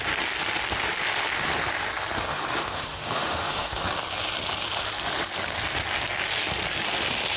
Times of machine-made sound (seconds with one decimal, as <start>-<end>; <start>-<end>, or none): 2.3-3.8